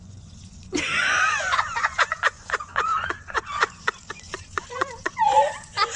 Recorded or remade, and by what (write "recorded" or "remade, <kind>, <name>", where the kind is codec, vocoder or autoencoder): remade, vocoder, Vocos